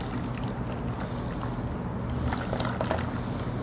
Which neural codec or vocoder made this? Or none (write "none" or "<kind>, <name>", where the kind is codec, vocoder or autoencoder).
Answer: none